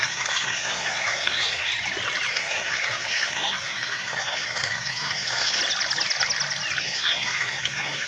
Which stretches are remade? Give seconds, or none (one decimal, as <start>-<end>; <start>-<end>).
0.0-1.7; 2.3-5.6; 6.8-8.1